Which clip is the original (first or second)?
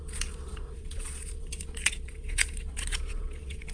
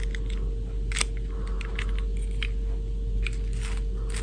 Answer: second